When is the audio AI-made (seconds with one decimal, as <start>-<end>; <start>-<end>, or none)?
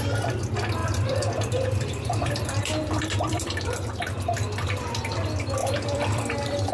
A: 0.8-4.8; 5.6-6.7